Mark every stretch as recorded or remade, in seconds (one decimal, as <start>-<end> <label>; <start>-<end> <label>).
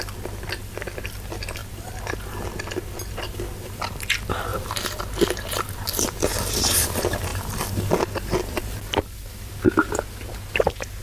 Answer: 0.0-11.0 recorded